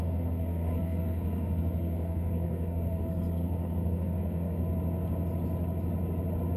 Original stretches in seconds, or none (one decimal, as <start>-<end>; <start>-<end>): 4.6-6.6